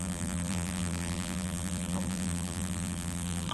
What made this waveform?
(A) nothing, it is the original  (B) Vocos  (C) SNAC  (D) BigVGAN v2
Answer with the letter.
D